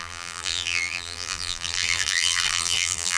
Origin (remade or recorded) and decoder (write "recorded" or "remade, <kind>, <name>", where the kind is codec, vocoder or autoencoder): remade, vocoder, BigVGAN v2